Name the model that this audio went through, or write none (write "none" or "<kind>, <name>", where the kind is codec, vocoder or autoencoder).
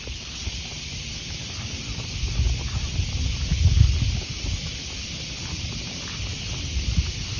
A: none